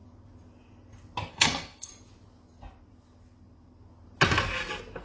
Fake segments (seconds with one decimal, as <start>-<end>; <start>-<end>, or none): 1.3-1.9